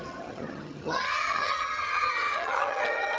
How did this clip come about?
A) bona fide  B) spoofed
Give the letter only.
B